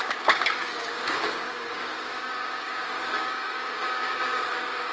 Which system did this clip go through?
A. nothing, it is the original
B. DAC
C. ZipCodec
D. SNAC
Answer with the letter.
B